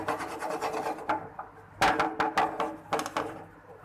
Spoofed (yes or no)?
no